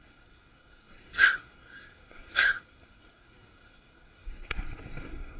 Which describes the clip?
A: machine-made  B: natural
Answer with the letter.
A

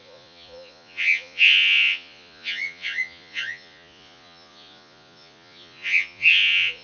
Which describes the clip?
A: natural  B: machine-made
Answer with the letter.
B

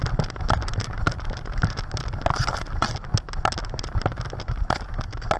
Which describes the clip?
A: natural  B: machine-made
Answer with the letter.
A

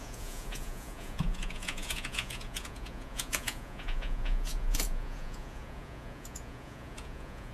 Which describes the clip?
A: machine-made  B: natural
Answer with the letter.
A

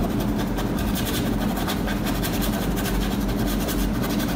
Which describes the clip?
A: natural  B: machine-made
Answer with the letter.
A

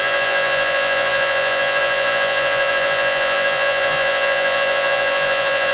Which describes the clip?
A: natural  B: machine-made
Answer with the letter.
B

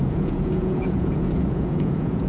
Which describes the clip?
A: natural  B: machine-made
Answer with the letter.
B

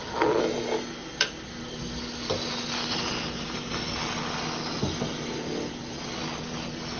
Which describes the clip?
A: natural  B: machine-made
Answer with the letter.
A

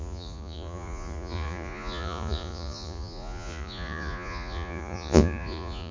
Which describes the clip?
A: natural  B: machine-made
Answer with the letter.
B